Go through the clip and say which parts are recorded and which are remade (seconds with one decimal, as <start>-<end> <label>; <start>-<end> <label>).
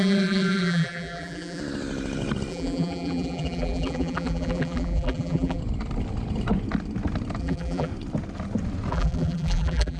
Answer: 0.0-1.6 remade; 1.6-2.5 recorded; 2.5-5.6 remade; 5.6-7.4 recorded; 7.4-7.9 remade; 7.9-8.9 recorded; 8.9-10.0 remade